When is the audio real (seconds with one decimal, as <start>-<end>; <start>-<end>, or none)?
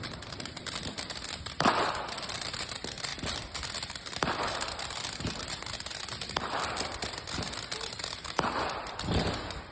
0.0-9.7